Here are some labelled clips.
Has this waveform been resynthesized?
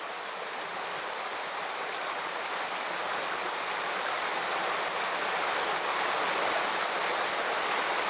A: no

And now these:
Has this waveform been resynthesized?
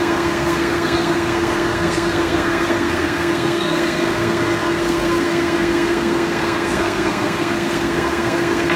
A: yes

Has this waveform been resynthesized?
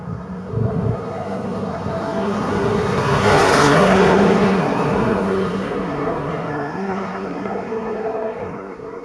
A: yes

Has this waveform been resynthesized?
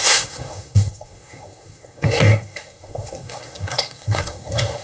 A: yes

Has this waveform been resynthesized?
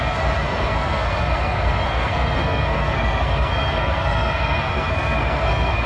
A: yes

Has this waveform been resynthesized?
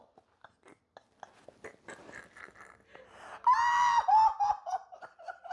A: no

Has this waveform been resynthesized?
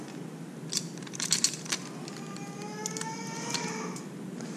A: no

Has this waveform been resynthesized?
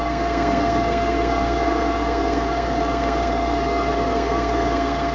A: yes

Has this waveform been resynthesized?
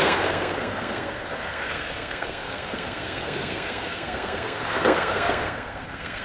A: yes